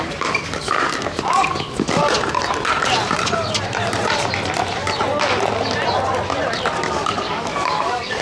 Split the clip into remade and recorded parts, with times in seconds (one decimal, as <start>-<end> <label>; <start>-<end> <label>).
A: 0.0-2.0 remade; 2.0-6.9 recorded; 6.9-8.2 remade